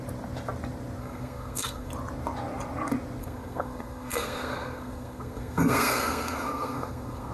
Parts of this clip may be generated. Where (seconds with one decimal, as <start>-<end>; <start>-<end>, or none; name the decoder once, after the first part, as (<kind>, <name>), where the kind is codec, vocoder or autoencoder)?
1.0-1.9 (codec, SNAC); 3.2-7.3

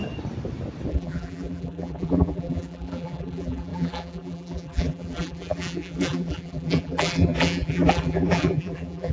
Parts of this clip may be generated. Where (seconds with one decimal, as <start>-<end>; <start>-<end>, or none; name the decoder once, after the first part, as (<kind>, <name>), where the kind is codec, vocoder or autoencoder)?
0.9-9.1 (vocoder, BigVGAN v2)

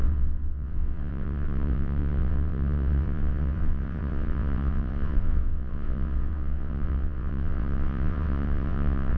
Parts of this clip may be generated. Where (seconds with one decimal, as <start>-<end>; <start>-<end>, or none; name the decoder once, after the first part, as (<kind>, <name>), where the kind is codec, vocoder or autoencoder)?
0.0-9.2 (vocoder, WaveNeXt)

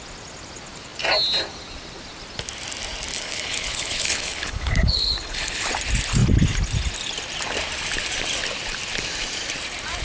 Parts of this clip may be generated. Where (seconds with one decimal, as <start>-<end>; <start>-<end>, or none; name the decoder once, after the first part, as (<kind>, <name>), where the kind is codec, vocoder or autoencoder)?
3.1-5.7 (codec, HILCodec)